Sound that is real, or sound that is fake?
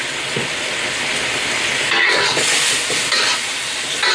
real